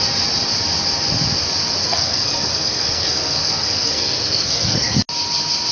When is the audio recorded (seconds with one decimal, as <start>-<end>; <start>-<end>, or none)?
0.0-1.8; 5.0-5.7